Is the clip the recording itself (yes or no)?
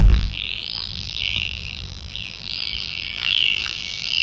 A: no